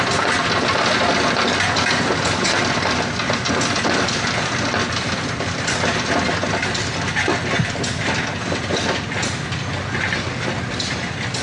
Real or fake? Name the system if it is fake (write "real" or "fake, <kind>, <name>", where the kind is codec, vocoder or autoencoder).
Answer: real